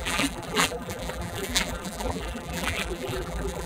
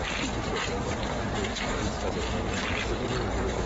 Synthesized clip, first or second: first